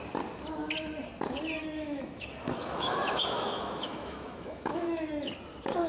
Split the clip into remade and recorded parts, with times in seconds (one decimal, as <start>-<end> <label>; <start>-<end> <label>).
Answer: 0.0-1.6 recorded; 1.6-5.1 remade; 5.1-5.9 recorded